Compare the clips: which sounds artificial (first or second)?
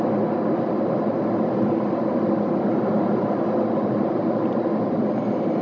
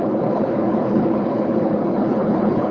second